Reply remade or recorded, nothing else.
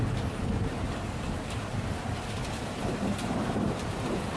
remade